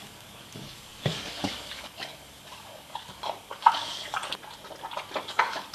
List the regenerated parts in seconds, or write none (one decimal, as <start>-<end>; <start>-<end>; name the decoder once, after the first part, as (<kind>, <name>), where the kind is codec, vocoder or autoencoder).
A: 0.0-4.2 (codec, DAC); 5.2-5.7